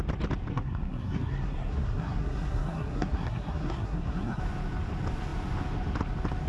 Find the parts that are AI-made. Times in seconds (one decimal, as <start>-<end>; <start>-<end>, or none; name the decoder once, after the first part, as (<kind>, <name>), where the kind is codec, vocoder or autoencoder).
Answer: 0.5-4.4 (codec, SNAC)